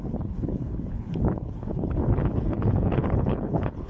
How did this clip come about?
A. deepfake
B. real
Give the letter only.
A